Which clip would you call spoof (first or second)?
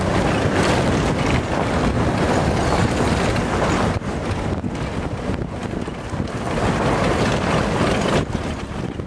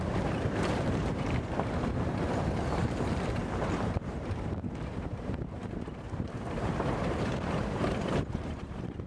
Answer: second